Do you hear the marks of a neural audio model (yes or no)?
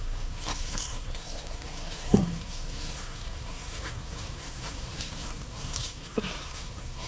yes